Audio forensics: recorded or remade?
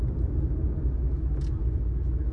recorded